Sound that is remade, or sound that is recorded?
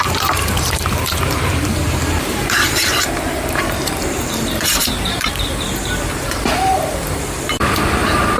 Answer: remade